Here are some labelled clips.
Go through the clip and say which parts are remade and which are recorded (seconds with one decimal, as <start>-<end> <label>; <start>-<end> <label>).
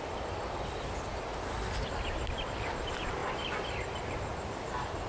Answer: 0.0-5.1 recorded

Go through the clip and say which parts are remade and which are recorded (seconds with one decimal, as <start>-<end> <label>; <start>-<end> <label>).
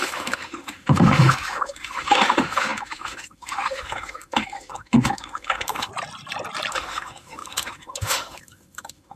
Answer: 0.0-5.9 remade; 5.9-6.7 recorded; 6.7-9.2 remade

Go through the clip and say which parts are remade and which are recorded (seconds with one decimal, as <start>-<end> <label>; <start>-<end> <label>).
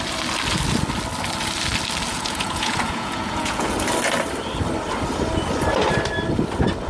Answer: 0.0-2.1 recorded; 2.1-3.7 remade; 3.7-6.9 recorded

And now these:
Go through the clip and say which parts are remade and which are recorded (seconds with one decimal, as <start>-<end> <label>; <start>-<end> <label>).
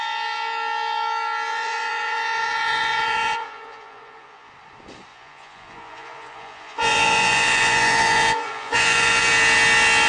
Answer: 0.0-1.5 recorded; 1.5-4.5 remade; 4.5-5.1 recorded; 5.1-9.3 remade; 9.3-10.1 recorded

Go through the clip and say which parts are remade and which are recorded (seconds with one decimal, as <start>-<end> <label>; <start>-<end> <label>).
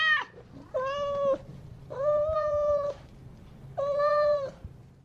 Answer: 0.0-1.5 recorded; 1.5-4.5 remade; 4.5-5.0 recorded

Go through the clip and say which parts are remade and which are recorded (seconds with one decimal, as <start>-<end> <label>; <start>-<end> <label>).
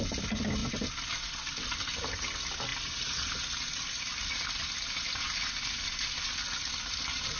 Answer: 0.0-7.4 recorded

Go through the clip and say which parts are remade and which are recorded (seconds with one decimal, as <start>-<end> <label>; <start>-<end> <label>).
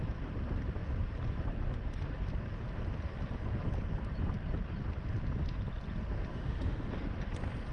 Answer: 0.0-6.3 recorded; 6.3-6.9 remade; 6.9-7.7 recorded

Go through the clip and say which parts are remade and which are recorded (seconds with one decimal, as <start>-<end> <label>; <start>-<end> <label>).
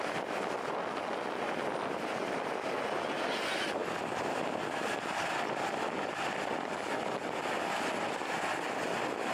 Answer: 0.0-3.8 recorded; 3.8-6.4 remade; 6.4-9.3 recorded